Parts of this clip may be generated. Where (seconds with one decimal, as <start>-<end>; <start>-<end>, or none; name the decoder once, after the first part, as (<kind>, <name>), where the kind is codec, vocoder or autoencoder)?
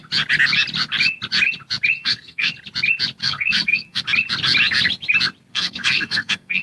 2.0-2.5 (codec, SNAC); 3.2-4.0; 5.5-6.6